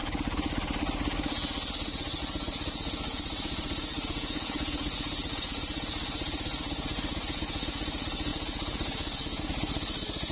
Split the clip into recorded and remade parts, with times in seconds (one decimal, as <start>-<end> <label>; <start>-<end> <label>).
0.0-2.2 recorded; 2.2-10.3 remade

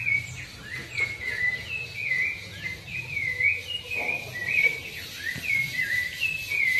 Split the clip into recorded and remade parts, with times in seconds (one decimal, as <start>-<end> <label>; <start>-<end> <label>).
0.0-0.8 recorded; 0.8-3.6 remade; 3.6-6.8 recorded